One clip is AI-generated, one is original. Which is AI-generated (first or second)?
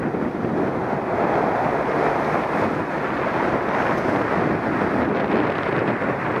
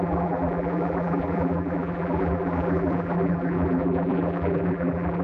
second